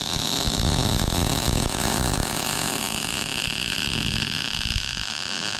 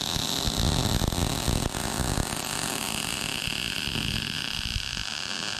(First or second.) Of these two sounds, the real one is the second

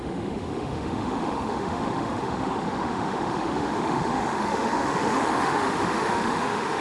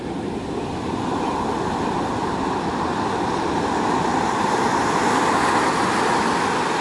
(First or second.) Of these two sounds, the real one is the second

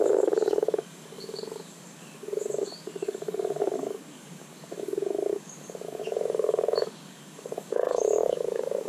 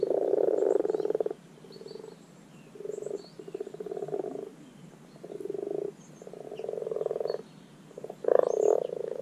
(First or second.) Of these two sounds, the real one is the second